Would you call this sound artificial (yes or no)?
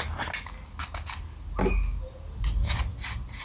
no